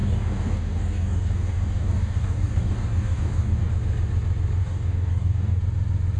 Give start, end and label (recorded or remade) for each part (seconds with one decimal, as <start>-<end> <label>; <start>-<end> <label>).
0.0-3.7 remade; 3.7-4.6 recorded; 4.6-5.6 remade; 5.6-6.2 recorded